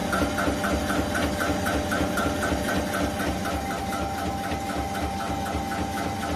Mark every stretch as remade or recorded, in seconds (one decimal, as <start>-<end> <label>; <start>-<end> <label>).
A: 0.0-6.4 recorded